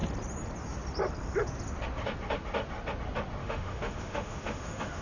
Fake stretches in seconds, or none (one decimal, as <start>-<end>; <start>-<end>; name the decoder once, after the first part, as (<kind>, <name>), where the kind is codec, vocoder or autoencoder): 3.4-5.0 (autoencoder, DAC-VAE)